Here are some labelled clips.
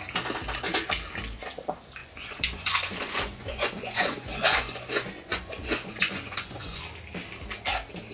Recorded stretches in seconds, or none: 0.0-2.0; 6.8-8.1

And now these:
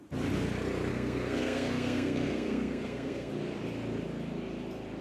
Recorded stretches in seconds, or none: 0.0-0.9; 3.3-5.0

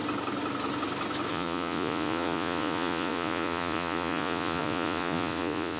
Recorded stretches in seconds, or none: 0.0-1.3

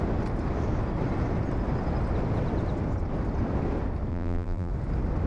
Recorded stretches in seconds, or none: 0.0-4.1; 4.7-5.3

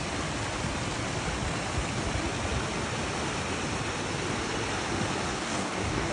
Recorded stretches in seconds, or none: 0.0-5.3

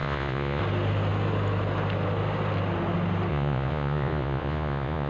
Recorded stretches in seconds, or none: 0.6-3.3